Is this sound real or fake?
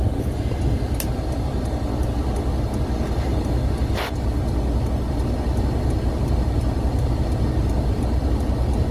real